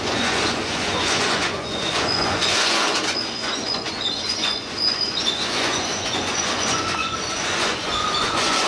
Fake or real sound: fake